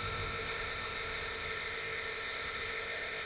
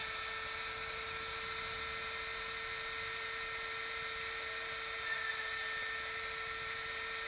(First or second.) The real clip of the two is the second